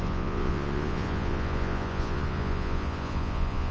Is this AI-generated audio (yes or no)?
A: yes